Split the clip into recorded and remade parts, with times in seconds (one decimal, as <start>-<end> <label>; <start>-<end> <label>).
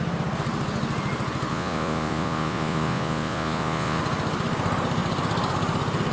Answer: 0.0-1.5 recorded; 1.5-4.0 remade; 4.0-6.1 recorded